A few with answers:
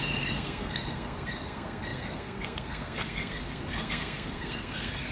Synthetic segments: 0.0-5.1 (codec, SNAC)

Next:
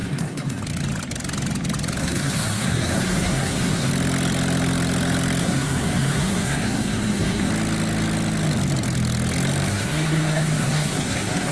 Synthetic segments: 0.0-0.6 (codec, SNAC); 2.0-3.9; 5.4-7.5; 9.7-11.5

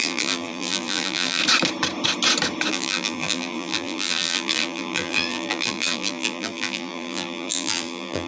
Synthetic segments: 0.0-1.4 (vocoder, BigVGAN v2); 2.7-8.3

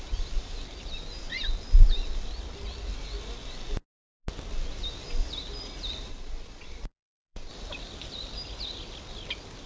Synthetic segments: 6.1-7.5 (vocoder, Vocos)

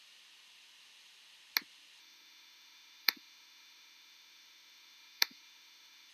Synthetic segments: 2.0-6.1 (autoencoder, DAC-VAE)